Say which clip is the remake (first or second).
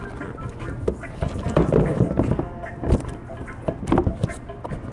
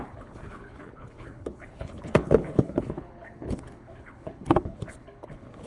second